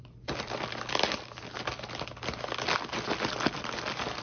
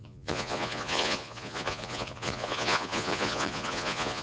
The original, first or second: first